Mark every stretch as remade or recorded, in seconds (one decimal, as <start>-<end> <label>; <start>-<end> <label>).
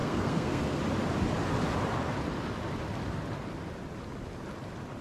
0.0-0.8 remade; 0.8-5.0 recorded